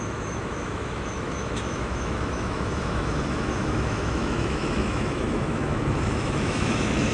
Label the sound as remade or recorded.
remade